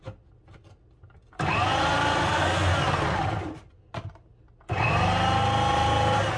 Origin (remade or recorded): recorded